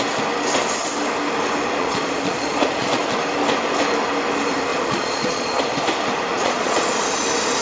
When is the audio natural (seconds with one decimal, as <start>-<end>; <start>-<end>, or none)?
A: 0.0-1.8; 3.0-4.7; 5.6-6.3; 6.9-7.6